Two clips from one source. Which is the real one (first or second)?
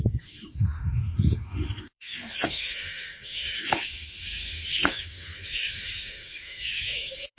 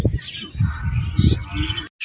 second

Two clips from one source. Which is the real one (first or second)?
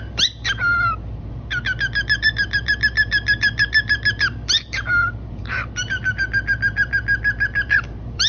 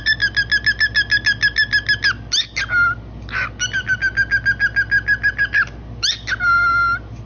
second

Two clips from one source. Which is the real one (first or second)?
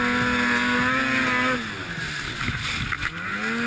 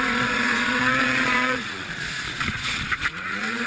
first